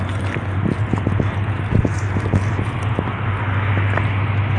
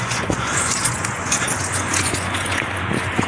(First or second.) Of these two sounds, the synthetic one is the second